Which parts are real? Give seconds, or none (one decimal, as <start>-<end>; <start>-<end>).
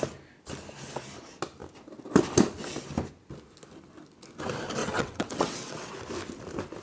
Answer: 0.0-4.8; 5.9-6.8